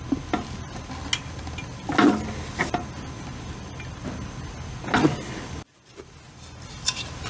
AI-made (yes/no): no